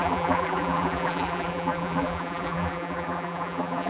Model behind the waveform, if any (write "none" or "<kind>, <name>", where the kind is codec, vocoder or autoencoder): vocoder, BigVGAN v2